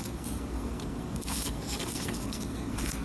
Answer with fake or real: fake